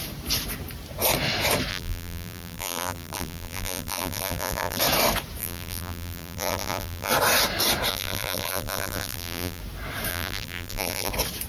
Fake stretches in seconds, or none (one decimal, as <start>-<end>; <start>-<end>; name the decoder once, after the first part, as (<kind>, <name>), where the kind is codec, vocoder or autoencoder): 1.7-4.8 (vocoder, BigVGAN v2); 5.4-7.1; 7.9-9.6; 10.1-11.1